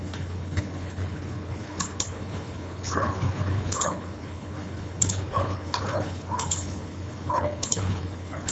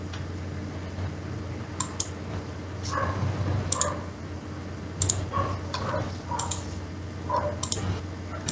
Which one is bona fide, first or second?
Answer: second